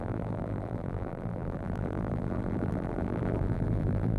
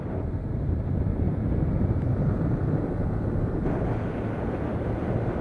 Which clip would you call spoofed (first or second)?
first